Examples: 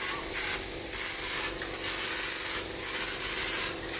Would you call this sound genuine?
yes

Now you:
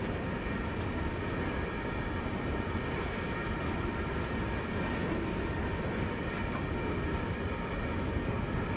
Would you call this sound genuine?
yes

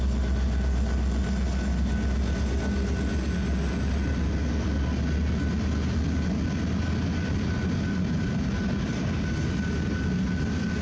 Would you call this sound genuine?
yes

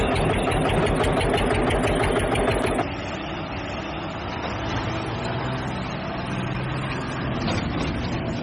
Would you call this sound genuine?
yes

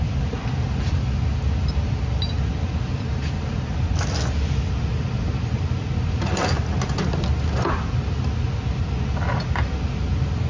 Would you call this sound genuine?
yes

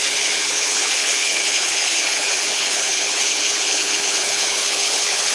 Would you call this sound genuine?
no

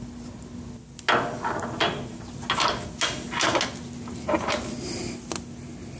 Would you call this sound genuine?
yes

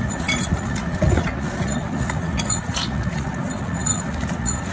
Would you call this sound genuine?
no